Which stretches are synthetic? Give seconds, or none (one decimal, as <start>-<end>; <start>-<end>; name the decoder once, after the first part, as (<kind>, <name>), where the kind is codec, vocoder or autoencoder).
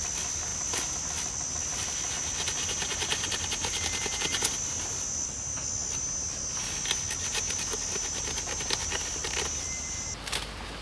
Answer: none